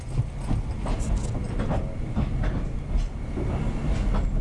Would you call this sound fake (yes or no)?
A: no